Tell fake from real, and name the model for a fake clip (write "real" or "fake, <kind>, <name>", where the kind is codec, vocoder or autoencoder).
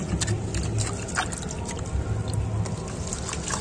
real